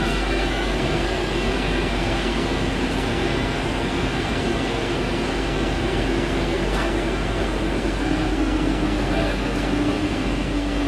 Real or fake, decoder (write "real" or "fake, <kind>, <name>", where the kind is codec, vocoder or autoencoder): fake, codec, SNAC